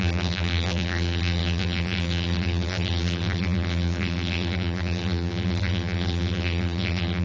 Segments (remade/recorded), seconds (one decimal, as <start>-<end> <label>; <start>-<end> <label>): 0.0-7.2 remade